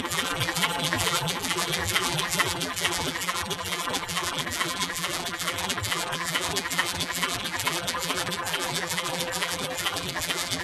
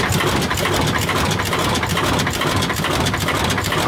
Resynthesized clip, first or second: first